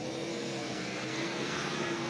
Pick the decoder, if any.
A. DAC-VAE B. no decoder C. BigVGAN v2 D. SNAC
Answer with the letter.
D